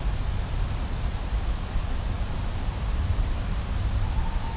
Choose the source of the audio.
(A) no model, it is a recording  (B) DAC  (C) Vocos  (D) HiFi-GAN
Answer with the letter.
A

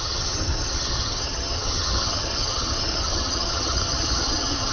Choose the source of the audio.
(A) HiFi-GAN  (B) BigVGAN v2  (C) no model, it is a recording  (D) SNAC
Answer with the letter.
A